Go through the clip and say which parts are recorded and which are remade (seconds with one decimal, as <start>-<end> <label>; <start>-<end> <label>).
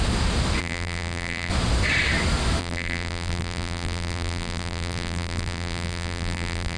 0.0-0.6 recorded; 0.6-1.5 remade; 1.5-2.6 recorded; 2.6-6.8 remade